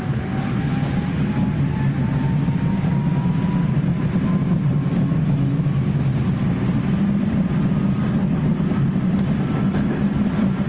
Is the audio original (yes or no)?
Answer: yes